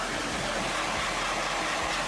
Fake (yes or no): no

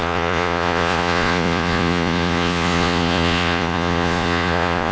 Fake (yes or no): yes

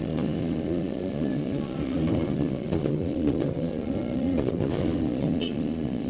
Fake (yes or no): yes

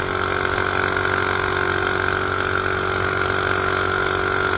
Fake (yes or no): no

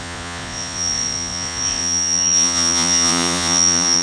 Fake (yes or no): yes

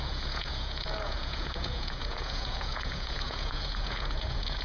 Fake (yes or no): yes